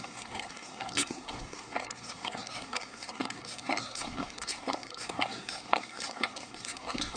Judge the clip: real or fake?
fake